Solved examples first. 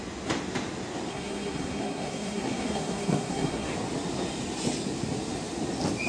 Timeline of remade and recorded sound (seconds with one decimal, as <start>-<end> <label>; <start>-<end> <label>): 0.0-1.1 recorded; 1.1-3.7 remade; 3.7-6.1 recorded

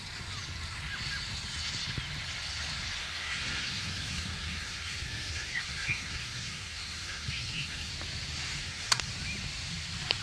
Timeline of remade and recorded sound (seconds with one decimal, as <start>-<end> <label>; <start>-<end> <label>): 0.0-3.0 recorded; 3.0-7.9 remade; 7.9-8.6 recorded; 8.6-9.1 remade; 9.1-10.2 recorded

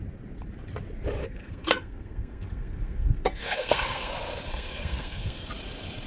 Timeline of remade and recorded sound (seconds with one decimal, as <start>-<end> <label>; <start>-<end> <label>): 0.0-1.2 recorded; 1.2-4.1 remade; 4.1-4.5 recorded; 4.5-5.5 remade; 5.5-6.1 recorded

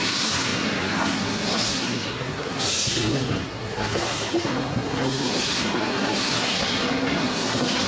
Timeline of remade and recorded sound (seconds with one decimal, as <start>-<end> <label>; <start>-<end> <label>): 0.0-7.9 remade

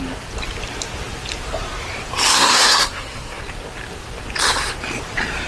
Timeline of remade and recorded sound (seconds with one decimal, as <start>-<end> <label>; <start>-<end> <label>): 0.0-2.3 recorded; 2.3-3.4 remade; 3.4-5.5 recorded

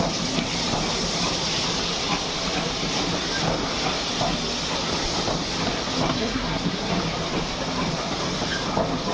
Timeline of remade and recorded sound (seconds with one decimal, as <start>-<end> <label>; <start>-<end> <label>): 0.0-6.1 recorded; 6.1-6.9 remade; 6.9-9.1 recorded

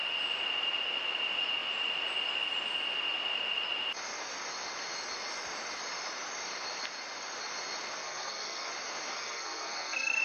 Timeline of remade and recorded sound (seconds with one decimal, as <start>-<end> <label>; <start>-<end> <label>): 0.0-8.0 recorded; 8.0-8.7 remade; 8.7-9.1 recorded; 9.1-10.2 remade